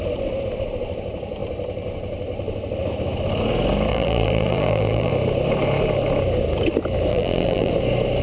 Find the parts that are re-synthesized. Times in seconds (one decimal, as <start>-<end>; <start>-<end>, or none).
3.9-5.1; 7.1-7.7